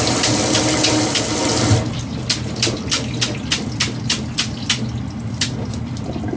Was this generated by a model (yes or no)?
no